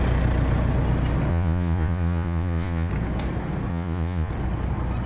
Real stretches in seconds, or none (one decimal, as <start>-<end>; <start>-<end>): 0.0-1.3; 2.9-3.7; 4.3-5.1